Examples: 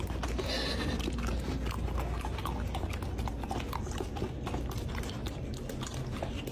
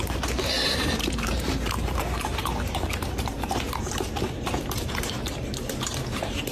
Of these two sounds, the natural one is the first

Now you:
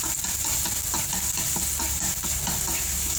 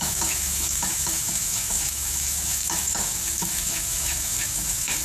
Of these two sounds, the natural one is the first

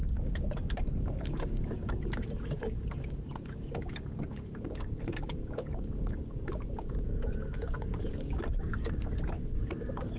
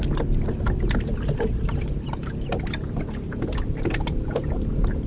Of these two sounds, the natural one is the second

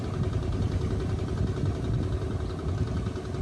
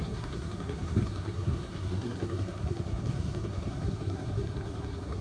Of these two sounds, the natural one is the first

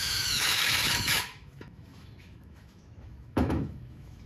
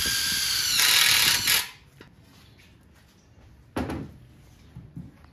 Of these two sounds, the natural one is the second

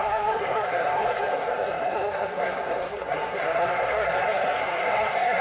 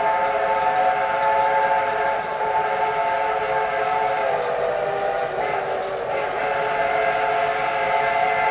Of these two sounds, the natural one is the second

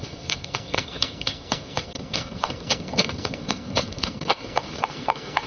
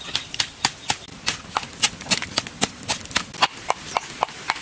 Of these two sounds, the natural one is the second